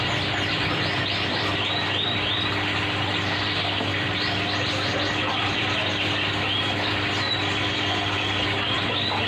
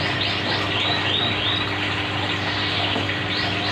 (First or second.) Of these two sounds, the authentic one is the second